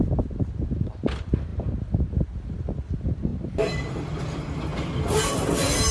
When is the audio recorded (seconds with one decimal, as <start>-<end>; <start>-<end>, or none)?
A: 0.0-5.9